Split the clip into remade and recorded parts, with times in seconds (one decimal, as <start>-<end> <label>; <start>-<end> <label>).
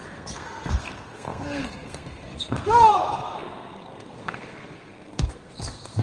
0.0-6.0 remade